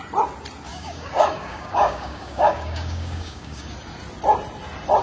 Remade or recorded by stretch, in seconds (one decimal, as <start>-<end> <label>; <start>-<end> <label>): 0.0-0.7 recorded; 0.7-3.7 remade; 3.7-5.0 recorded